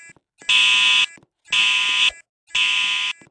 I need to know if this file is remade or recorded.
recorded